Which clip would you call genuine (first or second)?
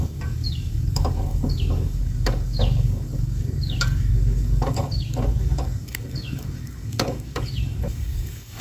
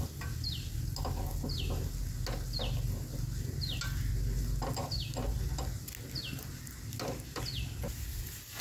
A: second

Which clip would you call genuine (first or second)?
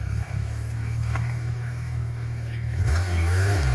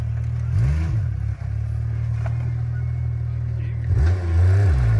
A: second